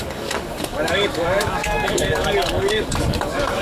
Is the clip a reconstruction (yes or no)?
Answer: yes